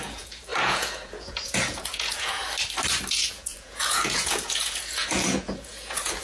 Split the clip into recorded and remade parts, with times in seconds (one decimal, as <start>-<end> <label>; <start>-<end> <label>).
0.0-2.4 remade; 2.4-3.1 recorded; 3.1-6.2 remade